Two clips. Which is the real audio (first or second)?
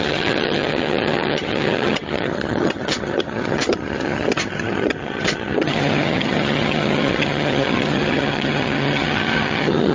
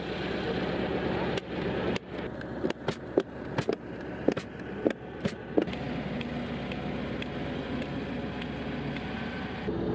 second